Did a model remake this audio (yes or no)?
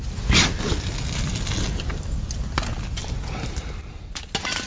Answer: no